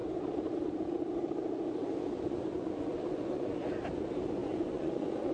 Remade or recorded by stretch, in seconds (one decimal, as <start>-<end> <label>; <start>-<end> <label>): 0.0-1.8 recorded; 1.8-3.6 remade; 3.6-4.4 recorded; 4.4-5.3 remade